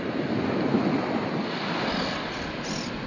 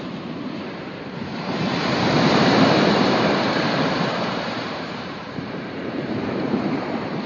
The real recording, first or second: first